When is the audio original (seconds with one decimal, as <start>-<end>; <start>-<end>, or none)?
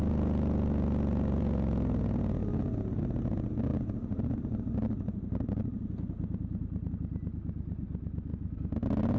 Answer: 0.0-3.7; 6.9-9.2